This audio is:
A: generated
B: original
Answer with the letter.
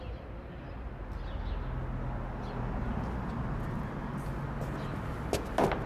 B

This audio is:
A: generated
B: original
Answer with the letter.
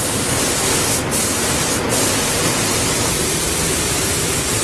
B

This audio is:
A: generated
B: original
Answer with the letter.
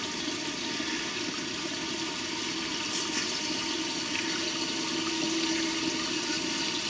B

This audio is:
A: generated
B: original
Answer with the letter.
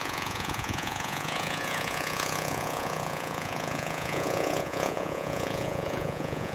A